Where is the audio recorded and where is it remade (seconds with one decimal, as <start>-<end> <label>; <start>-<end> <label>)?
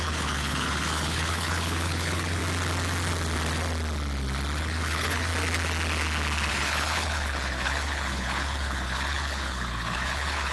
0.0-2.4 remade; 2.4-4.6 recorded; 4.6-5.3 remade; 5.3-6.5 recorded; 6.5-10.5 remade